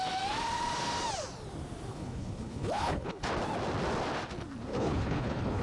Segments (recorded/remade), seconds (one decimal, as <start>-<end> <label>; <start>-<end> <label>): 0.0-1.9 recorded; 1.9-3.2 remade; 3.2-4.7 recorded; 4.7-5.6 remade